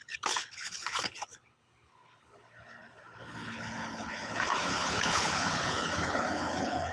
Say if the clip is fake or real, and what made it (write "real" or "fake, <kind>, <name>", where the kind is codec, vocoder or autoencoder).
fake, codec, HILCodec